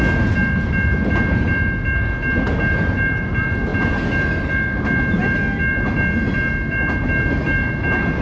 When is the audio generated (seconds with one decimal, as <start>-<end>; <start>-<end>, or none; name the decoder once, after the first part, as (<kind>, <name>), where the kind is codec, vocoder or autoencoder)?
none